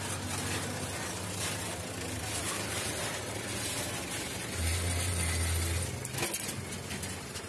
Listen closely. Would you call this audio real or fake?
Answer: real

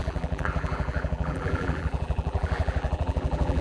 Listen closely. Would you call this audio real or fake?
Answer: fake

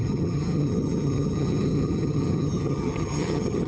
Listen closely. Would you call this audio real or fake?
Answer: fake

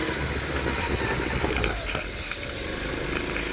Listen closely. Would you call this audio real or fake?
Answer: real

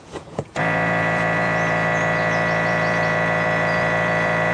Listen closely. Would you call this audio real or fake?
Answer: fake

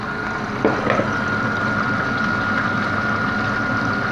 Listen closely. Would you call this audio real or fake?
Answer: real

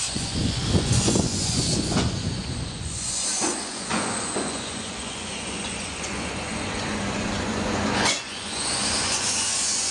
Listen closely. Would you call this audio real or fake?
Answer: fake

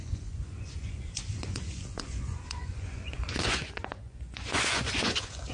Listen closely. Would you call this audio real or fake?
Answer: fake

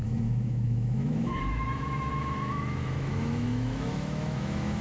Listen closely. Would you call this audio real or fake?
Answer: fake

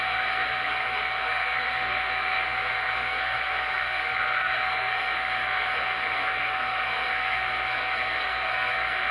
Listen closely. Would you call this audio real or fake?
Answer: fake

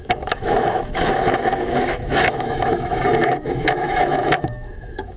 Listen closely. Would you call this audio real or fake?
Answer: fake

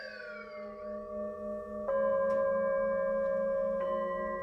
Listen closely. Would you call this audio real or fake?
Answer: real